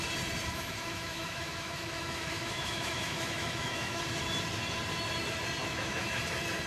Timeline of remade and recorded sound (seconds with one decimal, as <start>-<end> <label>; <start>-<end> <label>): 0.0-0.5 recorded; 0.5-4.0 remade; 4.0-5.6 recorded; 5.6-6.2 remade; 6.2-6.7 recorded